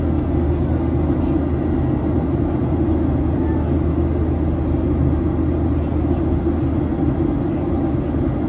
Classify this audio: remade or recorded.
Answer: recorded